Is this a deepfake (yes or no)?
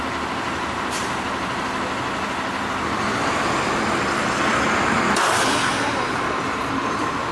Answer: no